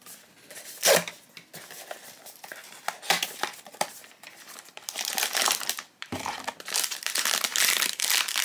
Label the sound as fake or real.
fake